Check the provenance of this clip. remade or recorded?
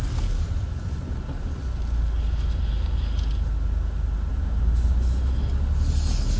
recorded